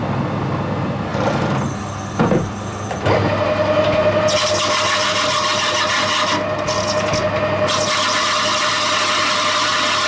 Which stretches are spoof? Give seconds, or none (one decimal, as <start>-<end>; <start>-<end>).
1.1-4.5